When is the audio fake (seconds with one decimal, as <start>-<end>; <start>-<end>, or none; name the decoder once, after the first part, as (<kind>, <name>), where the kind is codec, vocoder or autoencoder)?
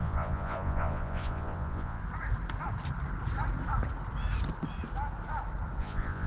0.0-2.0 (vocoder, Vocos); 5.8-6.3